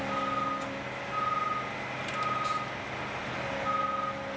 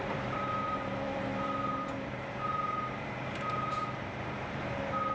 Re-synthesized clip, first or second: second